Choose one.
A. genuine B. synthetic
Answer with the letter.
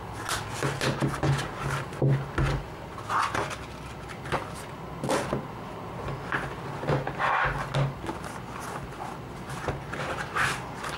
A